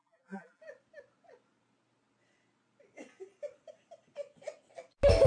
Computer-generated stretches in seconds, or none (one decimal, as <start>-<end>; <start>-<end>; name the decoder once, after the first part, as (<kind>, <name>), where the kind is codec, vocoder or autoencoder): 0.0-0.6 (vocoder, BigVGAN v2)